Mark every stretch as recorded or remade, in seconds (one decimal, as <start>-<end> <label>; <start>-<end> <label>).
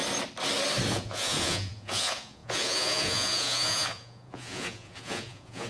0.0-0.9 recorded; 0.9-5.7 remade